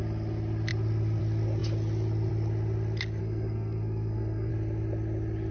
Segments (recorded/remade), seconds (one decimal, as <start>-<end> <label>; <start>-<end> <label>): 0.0-3.2 recorded; 3.2-4.5 remade; 4.5-5.5 recorded